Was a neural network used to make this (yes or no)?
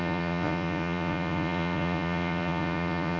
yes